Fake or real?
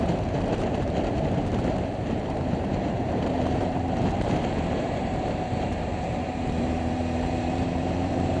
fake